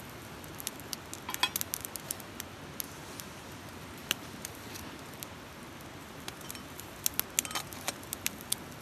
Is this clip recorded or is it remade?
recorded